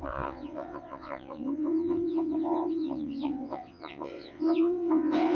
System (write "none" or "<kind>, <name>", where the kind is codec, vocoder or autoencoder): vocoder, WaveNeXt